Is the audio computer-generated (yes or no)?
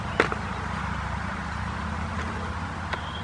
no